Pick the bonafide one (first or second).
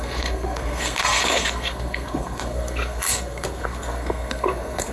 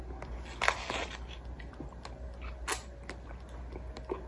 second